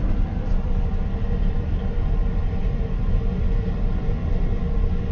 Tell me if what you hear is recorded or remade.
recorded